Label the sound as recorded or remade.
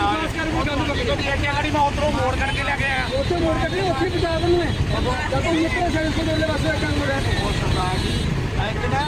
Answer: remade